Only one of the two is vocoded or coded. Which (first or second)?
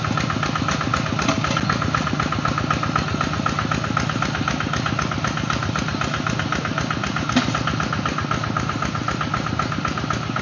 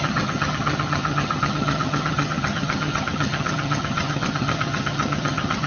second